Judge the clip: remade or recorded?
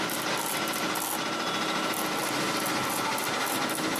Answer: recorded